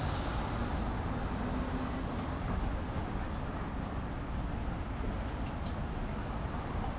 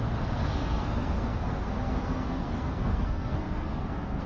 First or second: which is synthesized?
second